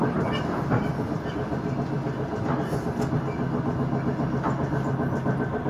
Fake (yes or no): no